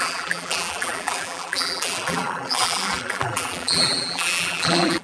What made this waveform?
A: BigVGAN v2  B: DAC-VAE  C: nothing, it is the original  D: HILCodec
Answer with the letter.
A